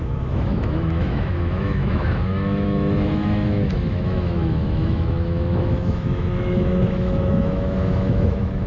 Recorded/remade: remade